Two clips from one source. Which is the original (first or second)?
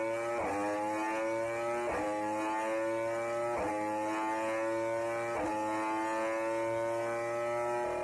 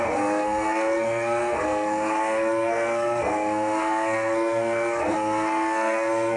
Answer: first